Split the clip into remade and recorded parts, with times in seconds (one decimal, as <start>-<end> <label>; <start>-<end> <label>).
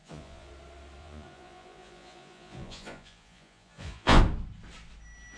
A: 0.0-0.5 remade; 0.5-1.0 recorded; 1.0-4.2 remade; 4.2-5.4 recorded